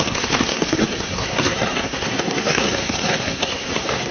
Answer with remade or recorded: remade